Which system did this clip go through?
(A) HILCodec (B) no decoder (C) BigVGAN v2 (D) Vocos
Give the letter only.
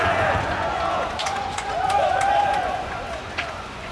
D